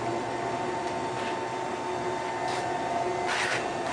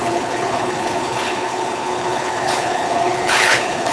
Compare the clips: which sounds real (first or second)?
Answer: first